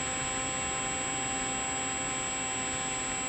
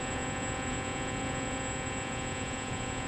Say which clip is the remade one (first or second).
second